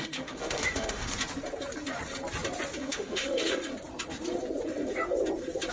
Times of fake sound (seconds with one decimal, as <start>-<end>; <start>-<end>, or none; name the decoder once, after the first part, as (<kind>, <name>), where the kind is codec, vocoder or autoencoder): 0.0-1.1 (autoencoder, DAC-VAE); 2.8-3.7